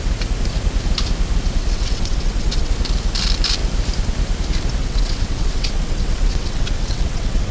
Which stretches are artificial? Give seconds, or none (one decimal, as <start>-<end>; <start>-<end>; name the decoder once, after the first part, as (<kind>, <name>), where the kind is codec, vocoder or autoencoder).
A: 1.6-2.7 (vocoder, WaveNeXt); 4.8-7.5